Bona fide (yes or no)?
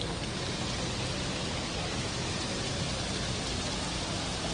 yes